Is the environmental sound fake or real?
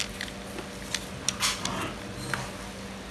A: real